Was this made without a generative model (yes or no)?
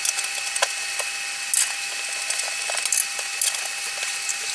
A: yes